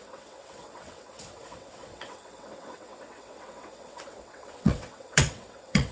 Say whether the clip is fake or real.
fake